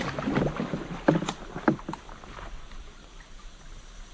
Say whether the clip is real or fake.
real